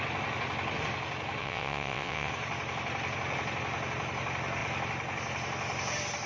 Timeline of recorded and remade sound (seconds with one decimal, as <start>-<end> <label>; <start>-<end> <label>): 0.0-1.4 recorded; 1.4-2.3 remade; 2.3-6.3 recorded